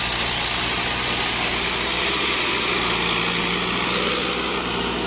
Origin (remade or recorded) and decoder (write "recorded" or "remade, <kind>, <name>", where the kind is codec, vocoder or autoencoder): recorded